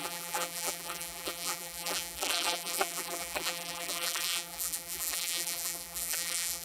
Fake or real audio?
fake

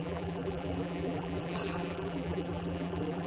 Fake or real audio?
fake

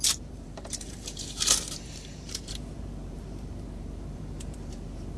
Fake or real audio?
fake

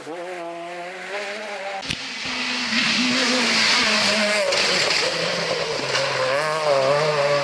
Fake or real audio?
real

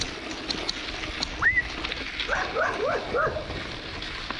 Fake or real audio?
real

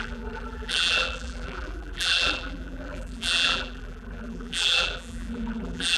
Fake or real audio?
fake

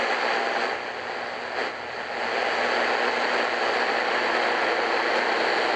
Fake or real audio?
real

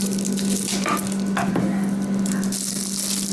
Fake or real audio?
real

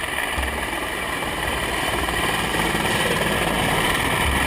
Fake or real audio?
fake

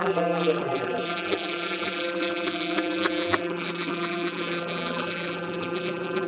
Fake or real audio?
fake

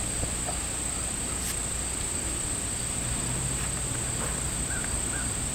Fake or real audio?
real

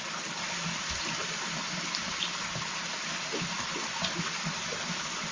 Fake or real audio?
fake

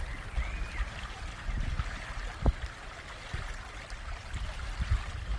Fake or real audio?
real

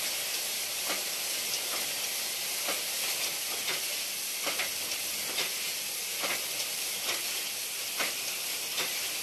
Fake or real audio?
real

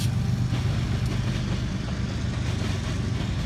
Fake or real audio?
real